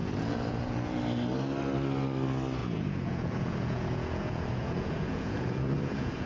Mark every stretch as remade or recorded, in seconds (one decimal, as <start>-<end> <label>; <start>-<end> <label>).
0.0-1.0 remade; 1.0-2.6 recorded; 2.6-6.3 remade

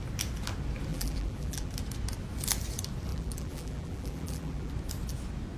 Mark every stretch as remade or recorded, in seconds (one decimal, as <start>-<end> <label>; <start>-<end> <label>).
0.0-0.9 recorded; 0.9-1.7 remade; 1.7-3.1 recorded; 3.1-4.7 remade; 4.7-5.6 recorded

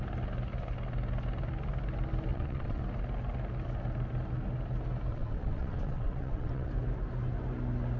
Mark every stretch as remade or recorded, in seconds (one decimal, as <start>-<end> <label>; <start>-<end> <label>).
0.0-2.3 recorded; 2.3-2.8 remade; 2.8-5.1 recorded; 5.1-6.7 remade; 6.7-8.0 recorded

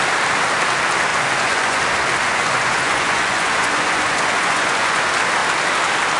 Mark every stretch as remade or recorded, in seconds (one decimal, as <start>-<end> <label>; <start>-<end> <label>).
0.0-1.1 recorded; 1.1-1.8 remade; 1.8-2.2 recorded; 2.2-5.0 remade; 5.0-6.2 recorded

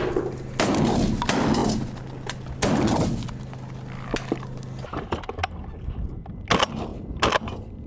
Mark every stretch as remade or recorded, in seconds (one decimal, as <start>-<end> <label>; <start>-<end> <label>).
0.0-7.9 recorded